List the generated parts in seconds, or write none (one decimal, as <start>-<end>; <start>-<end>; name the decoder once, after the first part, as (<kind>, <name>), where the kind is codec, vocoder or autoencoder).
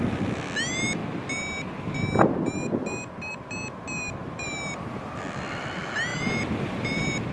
4.2-5.2 (vocoder, BigVGAN v2); 6.1-7.3